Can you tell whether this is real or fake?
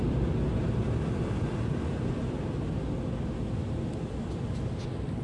real